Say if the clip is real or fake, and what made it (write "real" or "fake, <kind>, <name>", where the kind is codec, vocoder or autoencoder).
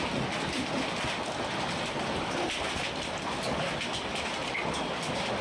real